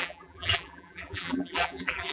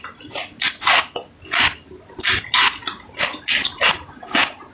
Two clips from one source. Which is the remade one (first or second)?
first